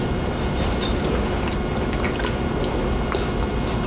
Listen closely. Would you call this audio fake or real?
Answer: real